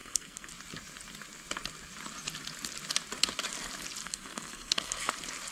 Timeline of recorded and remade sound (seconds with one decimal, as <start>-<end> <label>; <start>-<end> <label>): 0.0-0.5 remade; 0.5-4.0 recorded; 4.0-5.1 remade; 5.1-5.5 recorded